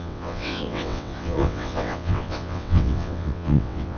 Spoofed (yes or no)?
yes